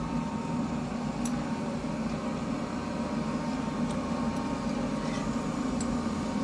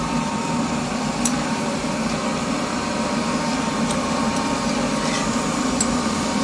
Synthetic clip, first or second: second